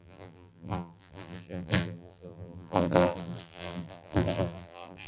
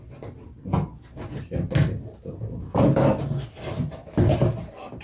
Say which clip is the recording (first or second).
second